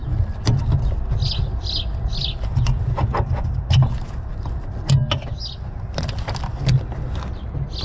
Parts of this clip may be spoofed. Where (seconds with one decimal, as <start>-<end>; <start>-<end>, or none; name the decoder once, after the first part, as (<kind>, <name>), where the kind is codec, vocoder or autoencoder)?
none